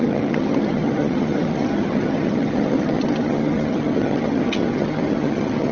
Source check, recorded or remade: remade